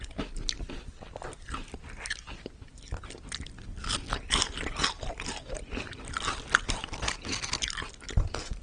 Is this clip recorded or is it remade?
recorded